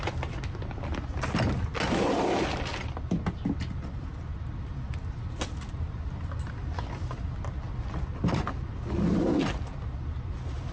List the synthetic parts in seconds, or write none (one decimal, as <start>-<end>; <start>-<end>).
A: none